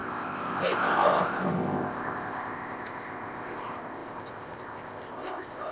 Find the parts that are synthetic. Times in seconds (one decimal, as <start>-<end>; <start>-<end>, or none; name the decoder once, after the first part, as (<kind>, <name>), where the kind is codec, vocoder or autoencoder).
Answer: 0.0-5.7 (codec, ZipCodec)